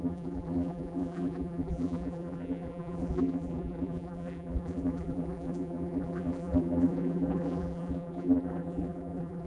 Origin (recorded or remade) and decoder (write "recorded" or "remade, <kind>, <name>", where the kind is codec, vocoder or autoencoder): remade, vocoder, BigVGAN v2